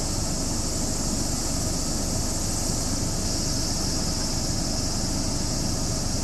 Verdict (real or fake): real